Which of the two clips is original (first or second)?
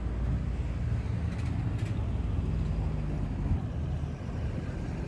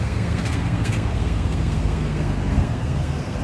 first